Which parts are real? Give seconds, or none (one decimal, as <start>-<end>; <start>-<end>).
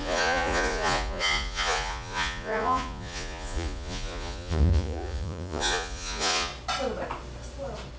6.5-8.0